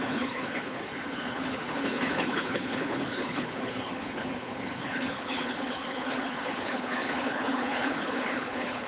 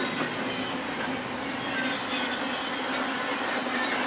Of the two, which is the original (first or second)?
second